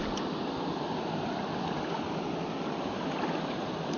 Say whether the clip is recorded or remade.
recorded